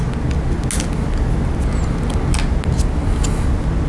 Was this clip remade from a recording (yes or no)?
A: no